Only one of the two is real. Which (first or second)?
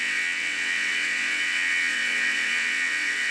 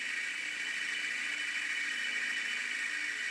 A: second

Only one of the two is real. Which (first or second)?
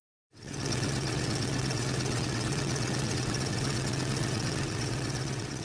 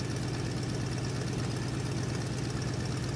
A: second